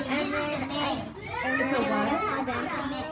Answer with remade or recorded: recorded